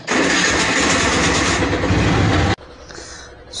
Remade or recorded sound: recorded